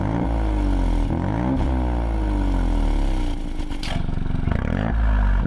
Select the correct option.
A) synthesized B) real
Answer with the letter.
B